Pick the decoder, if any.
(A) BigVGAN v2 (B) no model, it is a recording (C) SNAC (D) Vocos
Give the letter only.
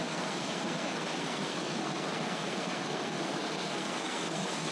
C